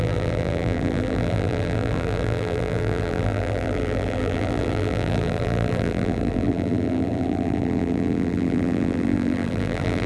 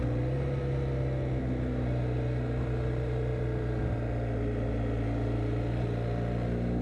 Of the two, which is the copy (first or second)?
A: first